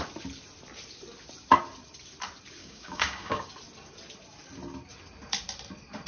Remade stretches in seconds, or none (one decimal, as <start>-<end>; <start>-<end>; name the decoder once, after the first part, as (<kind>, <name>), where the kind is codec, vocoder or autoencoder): 2.6-3.5 (codec, DAC)